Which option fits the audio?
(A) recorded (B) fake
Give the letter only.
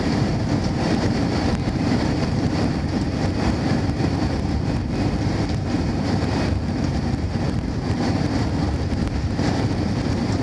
B